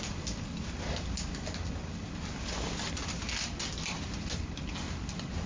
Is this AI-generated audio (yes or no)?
no